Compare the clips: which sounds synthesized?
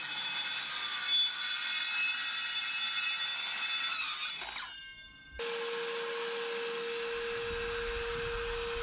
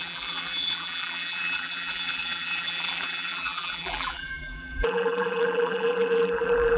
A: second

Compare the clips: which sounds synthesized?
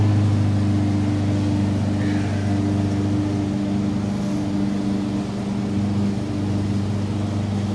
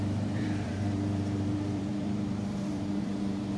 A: second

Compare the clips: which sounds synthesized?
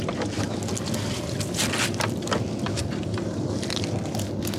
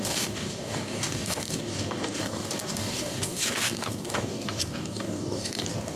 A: second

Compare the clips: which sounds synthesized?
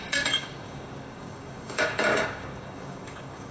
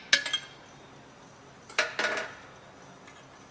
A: first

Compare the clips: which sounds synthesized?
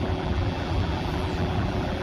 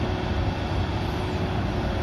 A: first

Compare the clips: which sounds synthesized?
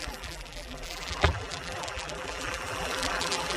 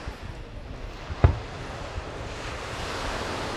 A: first